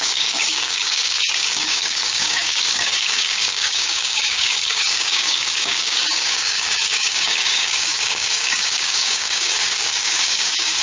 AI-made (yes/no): yes